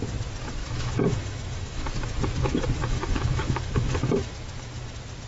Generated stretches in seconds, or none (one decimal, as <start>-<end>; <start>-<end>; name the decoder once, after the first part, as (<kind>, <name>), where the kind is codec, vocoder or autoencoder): 0.6-1.9 (autoencoder, DAC-VAE); 2.8-4.3